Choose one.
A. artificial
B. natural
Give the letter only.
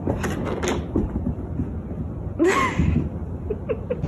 B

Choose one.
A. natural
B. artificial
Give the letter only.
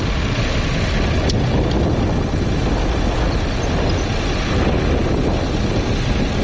A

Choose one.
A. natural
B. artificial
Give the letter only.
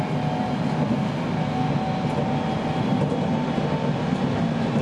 A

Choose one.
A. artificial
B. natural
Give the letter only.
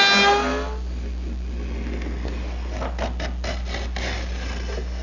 B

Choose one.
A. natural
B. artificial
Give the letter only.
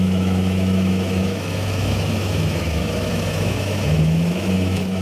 B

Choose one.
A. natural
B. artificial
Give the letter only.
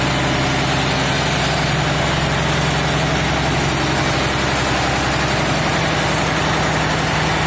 A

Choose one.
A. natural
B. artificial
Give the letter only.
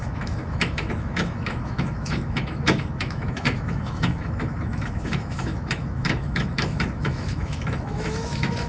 B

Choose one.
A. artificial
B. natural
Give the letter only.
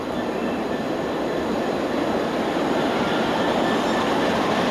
B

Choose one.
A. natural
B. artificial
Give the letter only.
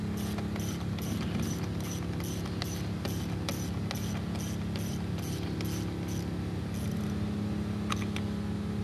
A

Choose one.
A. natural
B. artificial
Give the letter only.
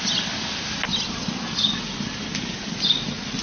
A